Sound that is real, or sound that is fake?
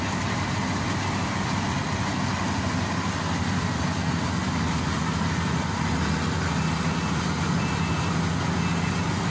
real